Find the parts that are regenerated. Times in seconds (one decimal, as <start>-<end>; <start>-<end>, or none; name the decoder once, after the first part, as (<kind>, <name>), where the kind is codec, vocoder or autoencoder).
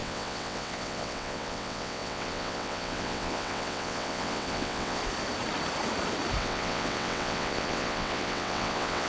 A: 0.0-5.0 (vocoder, WaveNeXt); 6.4-9.1